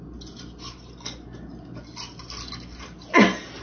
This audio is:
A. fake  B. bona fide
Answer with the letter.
B